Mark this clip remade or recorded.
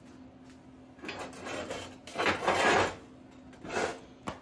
recorded